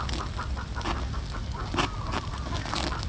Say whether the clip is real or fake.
real